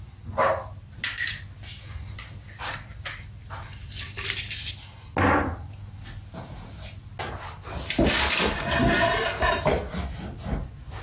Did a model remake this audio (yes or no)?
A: no